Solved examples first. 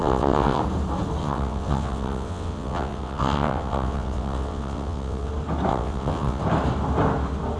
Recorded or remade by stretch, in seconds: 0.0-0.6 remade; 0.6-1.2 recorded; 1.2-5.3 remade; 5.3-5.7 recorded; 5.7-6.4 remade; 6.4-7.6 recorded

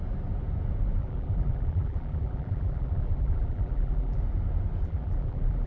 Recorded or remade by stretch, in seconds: 0.0-1.0 recorded; 1.0-4.2 remade; 4.2-4.8 recorded; 4.8-5.7 remade

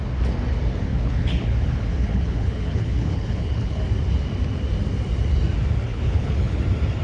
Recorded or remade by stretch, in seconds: 0.0-0.9 recorded; 0.9-3.8 remade; 3.8-5.9 recorded; 5.9-6.6 remade; 6.6-7.0 recorded

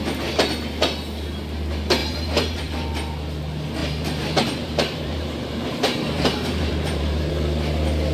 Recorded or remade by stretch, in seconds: 0.0-2.0 recorded; 2.0-2.9 remade; 2.9-3.8 recorded; 3.8-7.3 remade; 7.3-8.1 recorded

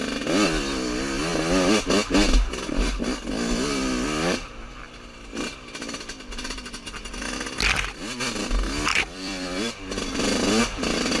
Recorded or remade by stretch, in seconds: 0.0-8.9 recorded; 8.9-10.6 remade; 10.6-11.2 recorded

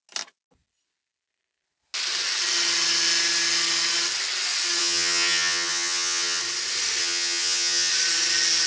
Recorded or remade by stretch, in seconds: 0.0-4.8 recorded; 4.8-6.4 remade; 6.4-7.0 recorded; 7.0-7.9 remade; 7.9-8.7 recorded

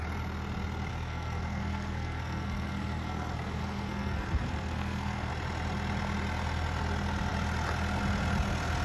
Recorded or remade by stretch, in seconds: 0.0-0.9 recorded; 0.9-5.3 remade; 5.3-8.8 recorded

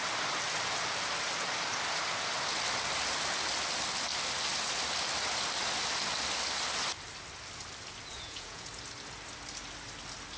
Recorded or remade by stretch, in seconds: 0.0-8.1 recorded; 8.1-8.7 remade; 8.7-10.4 recorded